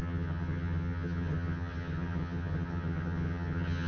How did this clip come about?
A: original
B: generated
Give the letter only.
B